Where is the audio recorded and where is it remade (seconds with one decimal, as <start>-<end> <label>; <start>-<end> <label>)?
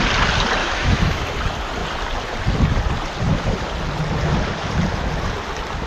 0.0-0.6 recorded; 0.6-1.2 remade; 1.2-5.9 recorded